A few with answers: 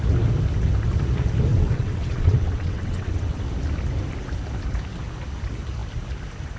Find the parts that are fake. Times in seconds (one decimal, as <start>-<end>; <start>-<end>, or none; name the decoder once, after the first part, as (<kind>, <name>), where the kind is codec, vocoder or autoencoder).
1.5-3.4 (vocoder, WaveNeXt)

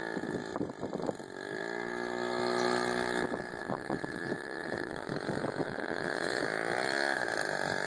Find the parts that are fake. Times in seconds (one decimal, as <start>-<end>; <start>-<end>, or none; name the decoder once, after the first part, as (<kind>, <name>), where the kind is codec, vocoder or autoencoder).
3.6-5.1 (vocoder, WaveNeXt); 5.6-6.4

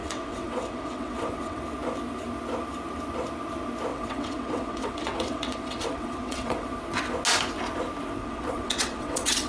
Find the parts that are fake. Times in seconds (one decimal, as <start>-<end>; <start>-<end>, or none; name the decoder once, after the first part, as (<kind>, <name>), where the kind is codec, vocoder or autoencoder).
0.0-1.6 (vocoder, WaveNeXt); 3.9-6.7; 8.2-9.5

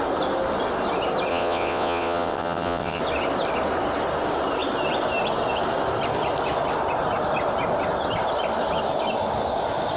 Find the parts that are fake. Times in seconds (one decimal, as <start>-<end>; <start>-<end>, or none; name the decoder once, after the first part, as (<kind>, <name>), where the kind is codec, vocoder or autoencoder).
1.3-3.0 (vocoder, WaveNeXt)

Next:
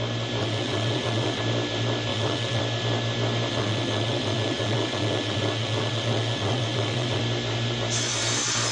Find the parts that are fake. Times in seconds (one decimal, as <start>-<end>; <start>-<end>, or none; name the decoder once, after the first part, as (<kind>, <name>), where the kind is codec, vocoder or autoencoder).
0.4-1.4 (vocoder, WaveNeXt); 2.1-2.6; 3.5-7.2

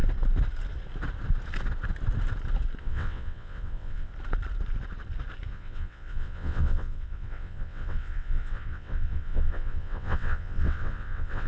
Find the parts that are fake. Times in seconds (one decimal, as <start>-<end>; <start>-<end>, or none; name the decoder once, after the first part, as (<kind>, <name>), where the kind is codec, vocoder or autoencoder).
2.8-4.1 (vocoder, WaveNeXt); 5.5-11.5